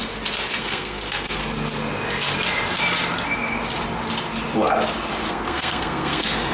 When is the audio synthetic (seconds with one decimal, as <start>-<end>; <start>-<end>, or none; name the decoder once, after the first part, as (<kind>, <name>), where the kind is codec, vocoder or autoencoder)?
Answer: 0.6-1.4 (codec, SNAC); 5.3-6.5